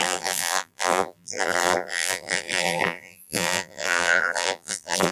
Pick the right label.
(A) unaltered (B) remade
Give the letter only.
B